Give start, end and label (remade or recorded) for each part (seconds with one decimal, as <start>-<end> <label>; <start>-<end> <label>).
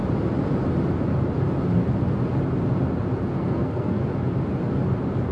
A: 0.0-3.3 recorded; 3.3-4.0 remade; 4.0-5.3 recorded